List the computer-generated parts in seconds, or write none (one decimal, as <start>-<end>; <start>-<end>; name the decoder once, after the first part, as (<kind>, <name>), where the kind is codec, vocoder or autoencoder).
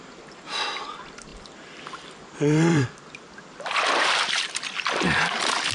1.3-4.3 (vocoder, BigVGAN v2)